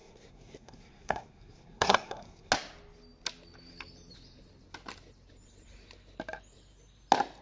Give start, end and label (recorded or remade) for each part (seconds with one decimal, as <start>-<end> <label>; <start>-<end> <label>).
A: 0.0-2.5 remade; 2.5-7.4 recorded